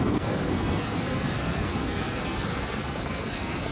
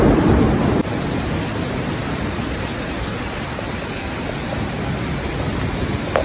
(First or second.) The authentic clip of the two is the second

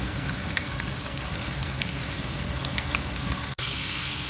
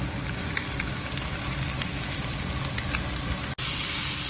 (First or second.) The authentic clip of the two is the second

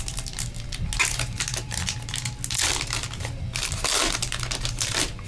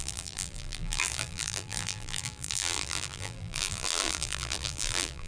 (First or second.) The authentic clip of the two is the first